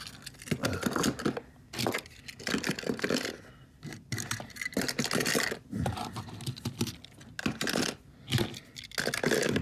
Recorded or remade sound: recorded